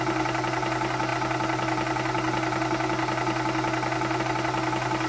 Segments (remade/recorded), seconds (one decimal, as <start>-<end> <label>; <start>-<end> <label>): 0.0-5.1 recorded